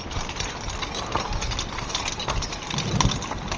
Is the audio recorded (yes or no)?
yes